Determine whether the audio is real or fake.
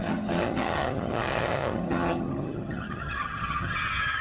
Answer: fake